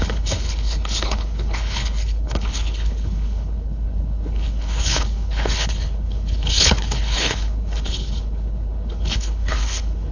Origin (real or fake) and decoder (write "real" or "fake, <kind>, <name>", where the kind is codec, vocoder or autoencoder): fake, codec, HILCodec